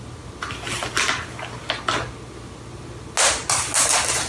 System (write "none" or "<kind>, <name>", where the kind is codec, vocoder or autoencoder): none